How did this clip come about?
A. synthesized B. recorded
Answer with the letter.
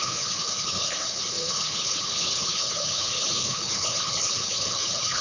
A